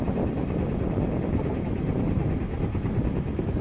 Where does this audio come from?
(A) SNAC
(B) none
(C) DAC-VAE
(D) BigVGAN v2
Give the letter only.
B